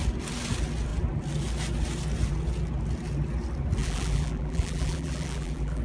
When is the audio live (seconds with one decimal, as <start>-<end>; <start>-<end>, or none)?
0.0-3.8